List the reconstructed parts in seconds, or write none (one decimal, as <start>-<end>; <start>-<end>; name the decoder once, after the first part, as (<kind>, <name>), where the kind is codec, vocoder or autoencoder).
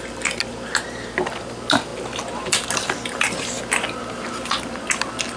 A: none